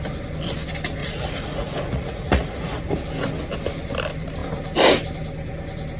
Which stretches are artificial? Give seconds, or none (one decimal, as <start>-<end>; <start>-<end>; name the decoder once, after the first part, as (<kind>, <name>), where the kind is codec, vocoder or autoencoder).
1.0-2.8 (vocoder, Vocos)

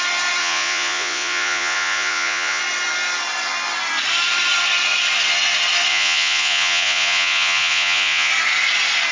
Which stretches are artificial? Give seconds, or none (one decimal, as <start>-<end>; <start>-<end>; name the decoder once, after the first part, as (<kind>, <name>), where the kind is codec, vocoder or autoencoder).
0.4-2.6 (vocoder, Vocos); 5.9-8.3